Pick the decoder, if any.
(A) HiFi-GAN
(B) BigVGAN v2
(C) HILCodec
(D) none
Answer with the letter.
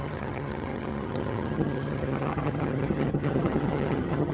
A